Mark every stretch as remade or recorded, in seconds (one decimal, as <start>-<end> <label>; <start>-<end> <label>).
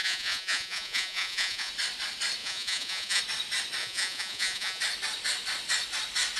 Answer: 0.0-1.7 remade; 1.7-2.4 recorded; 2.4-3.2 remade; 3.2-3.8 recorded; 3.8-4.8 remade; 4.8-6.4 recorded